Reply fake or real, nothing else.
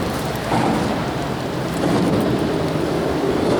real